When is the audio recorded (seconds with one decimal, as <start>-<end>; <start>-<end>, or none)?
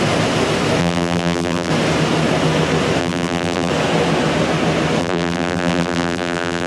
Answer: 0.0-0.8; 1.7-3.0; 3.7-5.0